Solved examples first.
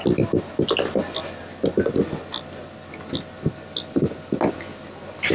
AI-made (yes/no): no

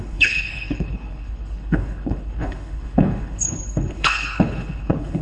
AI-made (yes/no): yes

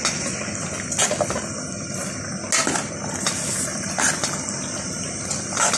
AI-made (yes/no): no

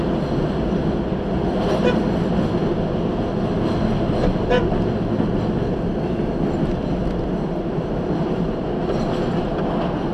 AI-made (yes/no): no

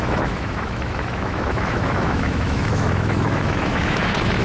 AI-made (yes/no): yes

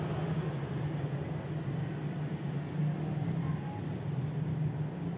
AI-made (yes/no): no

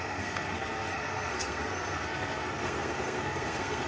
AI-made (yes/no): yes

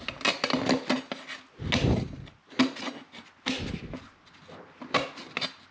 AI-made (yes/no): no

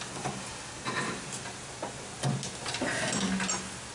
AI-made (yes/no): no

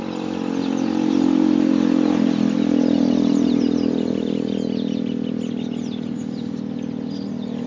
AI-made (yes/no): no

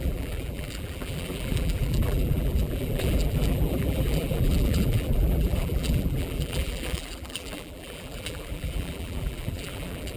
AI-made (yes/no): yes